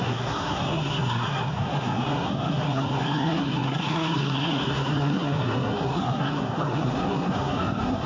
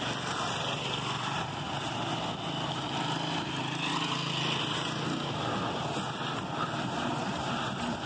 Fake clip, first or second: first